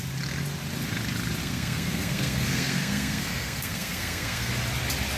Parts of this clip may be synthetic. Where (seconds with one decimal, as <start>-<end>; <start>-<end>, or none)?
1.4-4.5